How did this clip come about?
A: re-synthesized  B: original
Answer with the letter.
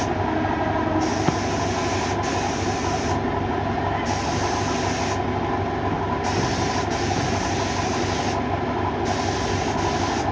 B